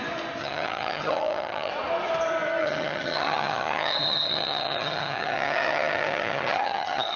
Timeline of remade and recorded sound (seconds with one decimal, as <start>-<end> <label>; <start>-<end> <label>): 0.0-0.4 recorded; 0.4-1.7 remade; 1.7-2.6 recorded; 2.6-7.2 remade